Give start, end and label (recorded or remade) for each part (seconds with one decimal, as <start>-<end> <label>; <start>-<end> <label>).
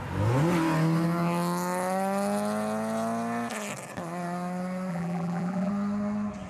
0.0-4.9 recorded; 4.9-5.7 remade; 5.7-6.5 recorded